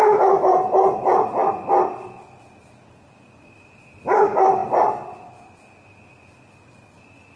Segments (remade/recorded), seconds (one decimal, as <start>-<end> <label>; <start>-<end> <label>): 0.0-7.4 recorded